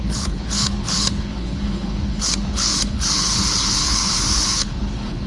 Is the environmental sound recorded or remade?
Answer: remade